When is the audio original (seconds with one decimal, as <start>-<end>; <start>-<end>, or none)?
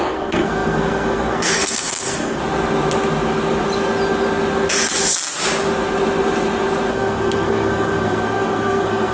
2.4-6.9